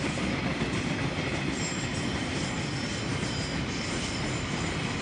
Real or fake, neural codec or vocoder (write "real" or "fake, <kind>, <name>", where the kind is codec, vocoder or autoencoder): real